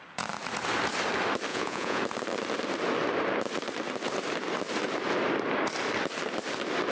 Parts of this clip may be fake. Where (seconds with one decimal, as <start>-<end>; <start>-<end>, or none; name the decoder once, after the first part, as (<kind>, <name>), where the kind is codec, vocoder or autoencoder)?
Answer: 1.5-2.0 (vocoder, Vocos)